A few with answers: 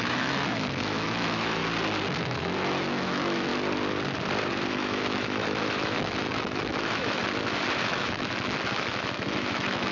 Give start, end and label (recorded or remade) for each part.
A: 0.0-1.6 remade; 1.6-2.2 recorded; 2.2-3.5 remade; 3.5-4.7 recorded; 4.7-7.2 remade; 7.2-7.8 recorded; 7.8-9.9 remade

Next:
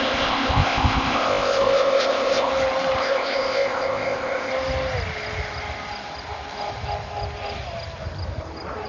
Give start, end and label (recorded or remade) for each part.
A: 0.0-2.5 remade; 2.5-3.0 recorded; 3.0-4.5 remade; 4.5-8.9 recorded

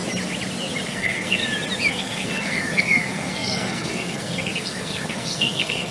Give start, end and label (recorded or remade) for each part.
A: 0.0-0.9 recorded; 0.9-1.4 remade; 1.4-1.9 recorded; 1.9-5.9 remade

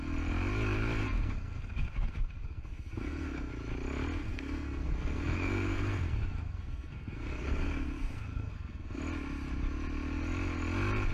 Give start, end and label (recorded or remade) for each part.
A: 0.0-1.0 recorded; 1.0-3.5 remade; 3.5-4.2 recorded; 4.2-9.0 remade; 9.0-11.1 recorded

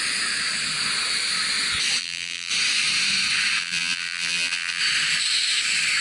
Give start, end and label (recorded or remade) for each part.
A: 0.0-2.0 recorded; 2.0-2.5 remade; 2.5-3.6 recorded; 3.6-4.8 remade; 4.8-6.0 recorded

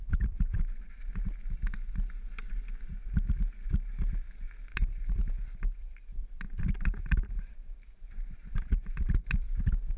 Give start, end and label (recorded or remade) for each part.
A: 0.0-1.0 remade; 1.0-4.7 recorded; 4.7-9.6 remade; 9.6-10.0 recorded